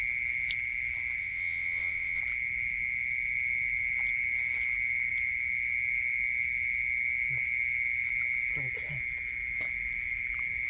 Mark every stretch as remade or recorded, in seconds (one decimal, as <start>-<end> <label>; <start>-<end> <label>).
0.0-1.2 recorded; 1.2-2.2 remade; 2.2-10.7 recorded